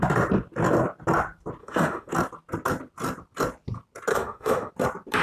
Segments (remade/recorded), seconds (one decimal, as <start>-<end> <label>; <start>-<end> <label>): 0.0-1.6 recorded; 1.6-2.1 remade; 2.1-4.1 recorded; 4.1-4.7 remade; 4.7-5.2 recorded